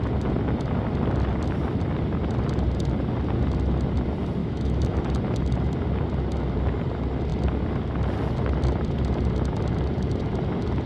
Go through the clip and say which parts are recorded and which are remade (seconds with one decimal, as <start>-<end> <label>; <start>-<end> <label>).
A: 0.0-4.4 recorded; 4.4-5.0 remade; 5.0-10.9 recorded